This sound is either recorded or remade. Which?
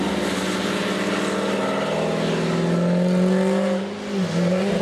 recorded